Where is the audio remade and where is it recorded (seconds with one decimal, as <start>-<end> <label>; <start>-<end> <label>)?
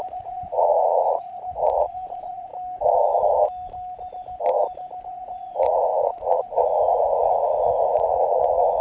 0.0-2.5 remade; 2.5-5.1 recorded; 5.1-8.8 remade